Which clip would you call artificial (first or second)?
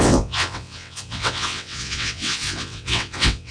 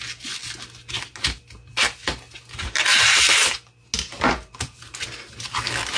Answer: first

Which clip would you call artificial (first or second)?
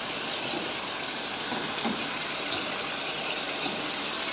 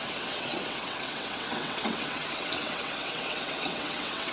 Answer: second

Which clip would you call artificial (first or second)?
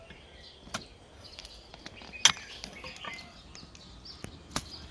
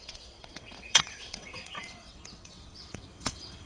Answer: second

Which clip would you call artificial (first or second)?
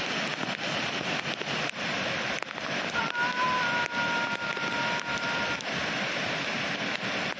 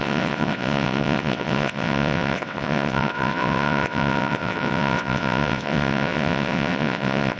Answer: second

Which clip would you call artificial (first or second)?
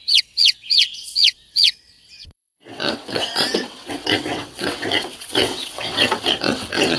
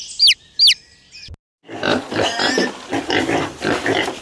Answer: first